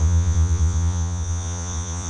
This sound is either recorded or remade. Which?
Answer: remade